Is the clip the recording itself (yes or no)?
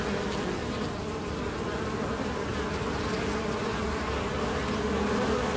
yes